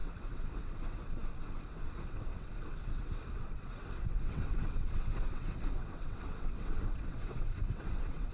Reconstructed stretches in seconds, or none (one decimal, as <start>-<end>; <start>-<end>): 0.0-8.3